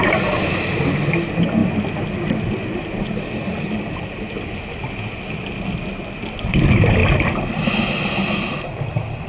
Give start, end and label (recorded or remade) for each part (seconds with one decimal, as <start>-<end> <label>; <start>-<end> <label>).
0.0-9.3 recorded